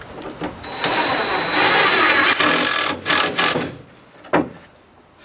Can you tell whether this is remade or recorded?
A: recorded